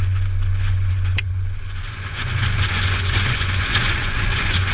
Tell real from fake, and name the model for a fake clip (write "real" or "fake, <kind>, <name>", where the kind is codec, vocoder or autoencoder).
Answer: fake, vocoder, Vocos